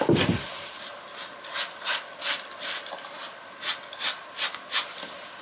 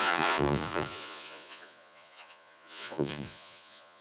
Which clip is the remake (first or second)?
second